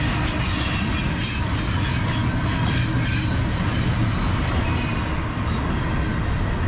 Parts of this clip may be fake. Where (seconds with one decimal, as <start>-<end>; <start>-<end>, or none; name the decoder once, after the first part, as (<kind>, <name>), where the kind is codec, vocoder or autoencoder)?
none